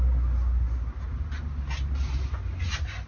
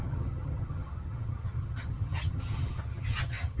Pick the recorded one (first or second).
first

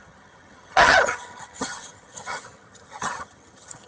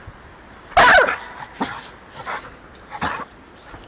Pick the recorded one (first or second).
second